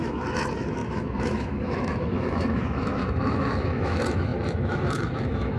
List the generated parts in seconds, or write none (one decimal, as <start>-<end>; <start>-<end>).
0.0-5.6